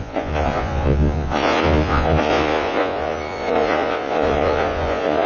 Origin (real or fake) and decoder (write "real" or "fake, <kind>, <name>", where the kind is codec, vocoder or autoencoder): fake, vocoder, Vocos